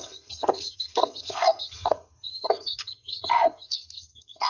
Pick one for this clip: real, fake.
fake